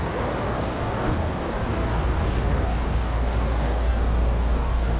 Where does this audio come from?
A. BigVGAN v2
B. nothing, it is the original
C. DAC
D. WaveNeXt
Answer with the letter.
C